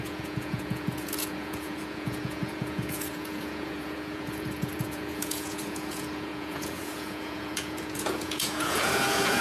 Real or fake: fake